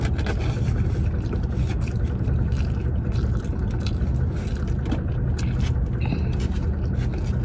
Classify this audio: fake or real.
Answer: real